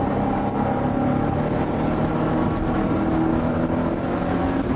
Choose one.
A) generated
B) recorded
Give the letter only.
B